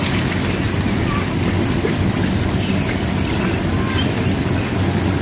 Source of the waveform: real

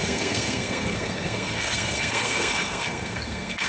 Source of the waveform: fake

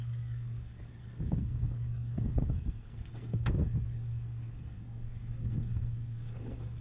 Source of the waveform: fake